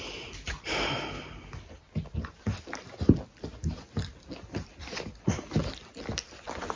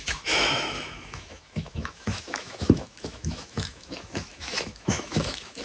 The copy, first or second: second